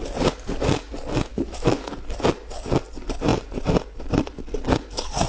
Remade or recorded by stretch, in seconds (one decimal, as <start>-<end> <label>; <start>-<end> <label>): 0.0-1.3 recorded; 1.3-1.9 remade; 1.9-5.3 recorded